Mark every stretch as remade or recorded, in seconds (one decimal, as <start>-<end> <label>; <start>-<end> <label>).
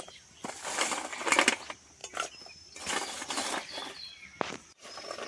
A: 0.0-5.3 recorded